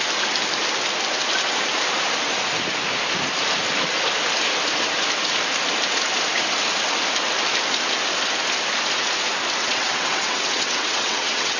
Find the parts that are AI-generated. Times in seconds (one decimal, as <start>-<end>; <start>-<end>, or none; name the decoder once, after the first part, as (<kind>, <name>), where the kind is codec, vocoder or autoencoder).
9.6-11.6 (vocoder, WaveNeXt)